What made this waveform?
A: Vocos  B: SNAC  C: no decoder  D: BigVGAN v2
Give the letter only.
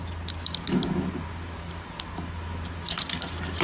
C